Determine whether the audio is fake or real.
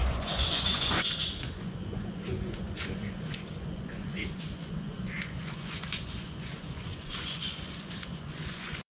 fake